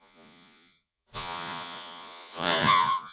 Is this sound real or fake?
fake